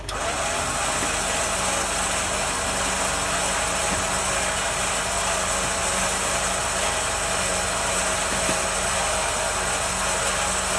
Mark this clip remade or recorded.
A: recorded